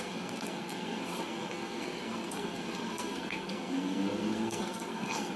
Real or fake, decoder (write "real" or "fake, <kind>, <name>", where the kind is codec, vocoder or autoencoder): fake, codec, SNAC